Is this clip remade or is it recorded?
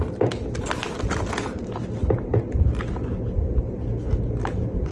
recorded